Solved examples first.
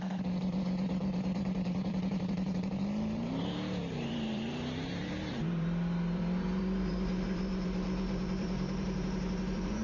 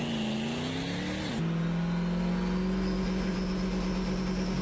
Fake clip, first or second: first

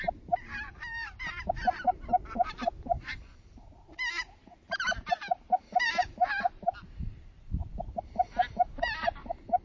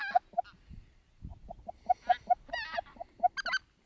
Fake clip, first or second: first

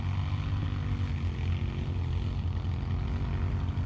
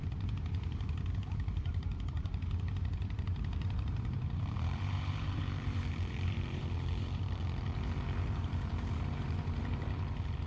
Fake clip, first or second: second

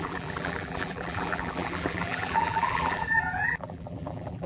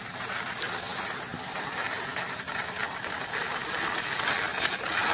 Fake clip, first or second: first